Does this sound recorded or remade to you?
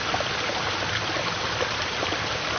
recorded